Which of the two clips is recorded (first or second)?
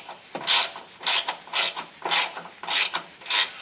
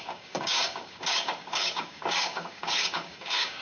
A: first